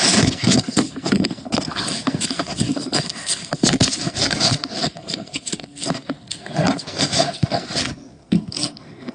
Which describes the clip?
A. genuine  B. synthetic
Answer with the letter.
B